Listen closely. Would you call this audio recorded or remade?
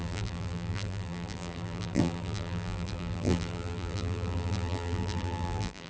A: remade